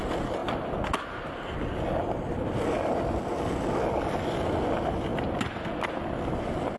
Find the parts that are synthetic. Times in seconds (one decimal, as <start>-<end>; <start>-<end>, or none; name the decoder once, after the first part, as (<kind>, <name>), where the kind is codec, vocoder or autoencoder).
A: none